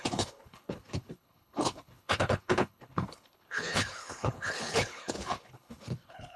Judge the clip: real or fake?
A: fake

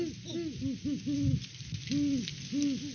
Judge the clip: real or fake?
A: real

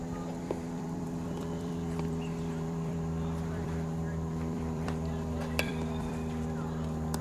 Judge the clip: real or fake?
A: fake